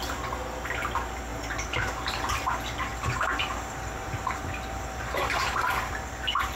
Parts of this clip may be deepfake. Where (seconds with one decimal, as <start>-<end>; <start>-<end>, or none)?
1.3-2.2; 2.9-5.9